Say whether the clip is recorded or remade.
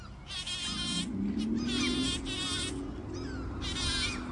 recorded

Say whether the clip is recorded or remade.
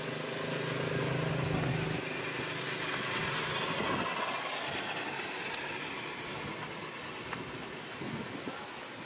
recorded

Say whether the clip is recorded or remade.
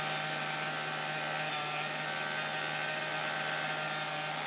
recorded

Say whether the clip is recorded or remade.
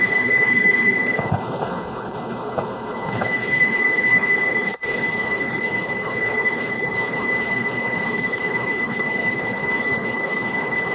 remade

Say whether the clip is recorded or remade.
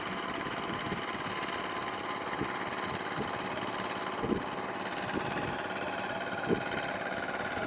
recorded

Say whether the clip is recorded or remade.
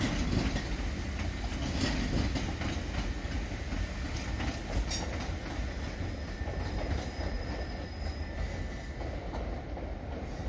recorded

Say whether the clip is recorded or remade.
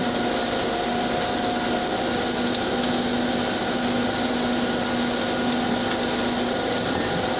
recorded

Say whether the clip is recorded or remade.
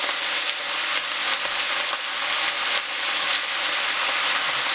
recorded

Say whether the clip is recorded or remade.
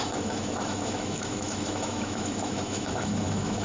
remade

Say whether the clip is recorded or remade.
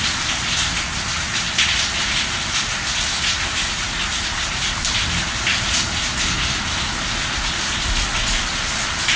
recorded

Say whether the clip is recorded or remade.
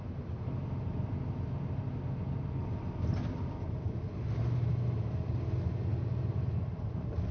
recorded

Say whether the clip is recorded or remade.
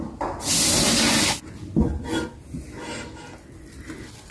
recorded